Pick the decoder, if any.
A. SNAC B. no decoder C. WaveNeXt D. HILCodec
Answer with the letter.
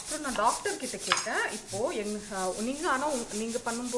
B